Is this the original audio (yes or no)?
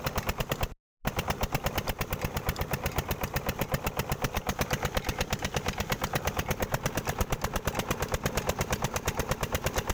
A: yes